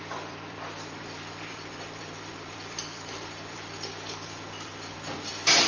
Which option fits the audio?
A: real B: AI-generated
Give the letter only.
B